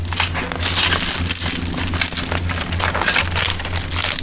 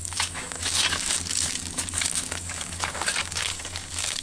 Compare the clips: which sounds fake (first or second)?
second